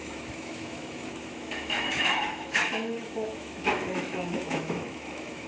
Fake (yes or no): yes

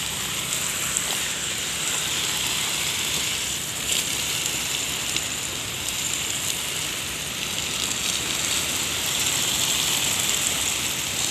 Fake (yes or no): no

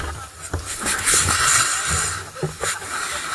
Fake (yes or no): no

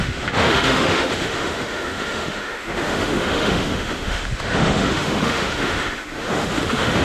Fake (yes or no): yes